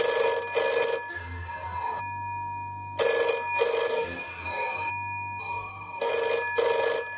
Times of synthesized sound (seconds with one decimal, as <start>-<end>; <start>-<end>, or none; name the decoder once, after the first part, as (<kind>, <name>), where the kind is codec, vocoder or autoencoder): 1.1-2.0 (codec, DAC); 3.9-4.9; 5.4-6.1